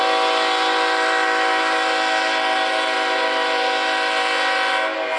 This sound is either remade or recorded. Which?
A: recorded